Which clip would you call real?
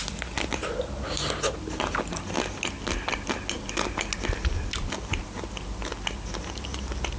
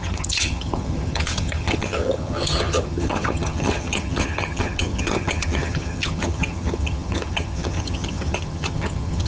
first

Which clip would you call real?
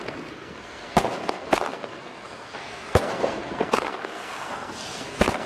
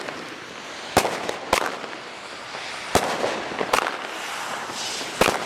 second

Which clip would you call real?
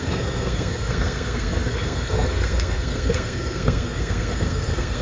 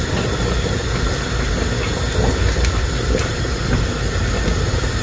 second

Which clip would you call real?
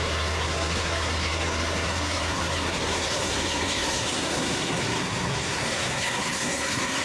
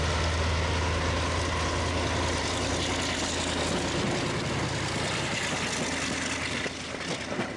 second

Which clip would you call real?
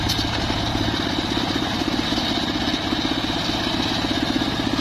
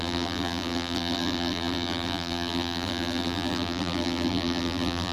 first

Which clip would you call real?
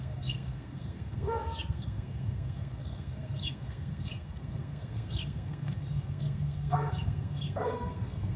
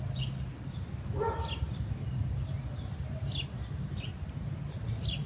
second